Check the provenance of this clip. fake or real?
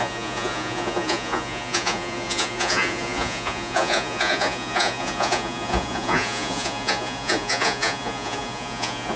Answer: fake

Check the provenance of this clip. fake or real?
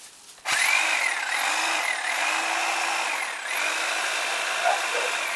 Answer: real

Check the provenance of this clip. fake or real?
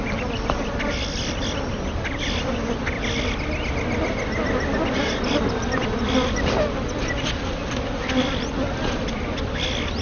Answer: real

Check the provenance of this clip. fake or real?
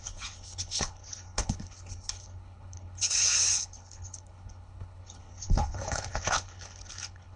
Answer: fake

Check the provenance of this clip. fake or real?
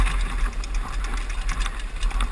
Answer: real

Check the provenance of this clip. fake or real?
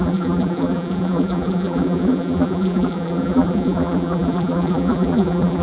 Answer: fake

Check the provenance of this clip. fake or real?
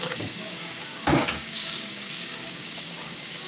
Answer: fake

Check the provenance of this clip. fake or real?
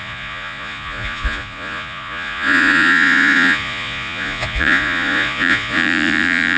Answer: fake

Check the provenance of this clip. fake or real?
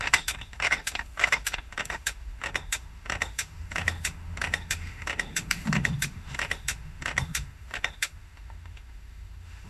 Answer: fake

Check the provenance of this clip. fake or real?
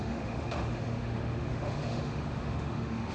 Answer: fake